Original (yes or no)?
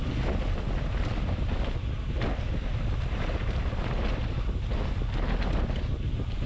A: yes